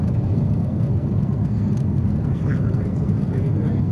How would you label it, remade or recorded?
remade